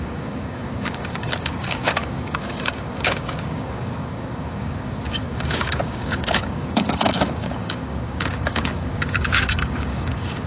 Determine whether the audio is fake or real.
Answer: fake